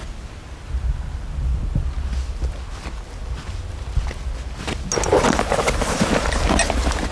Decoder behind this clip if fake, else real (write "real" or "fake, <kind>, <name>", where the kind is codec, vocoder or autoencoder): real